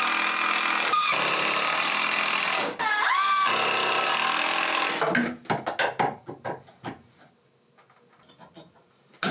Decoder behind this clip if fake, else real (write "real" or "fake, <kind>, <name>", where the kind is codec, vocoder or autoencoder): real